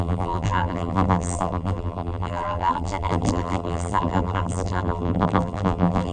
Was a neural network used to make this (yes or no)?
yes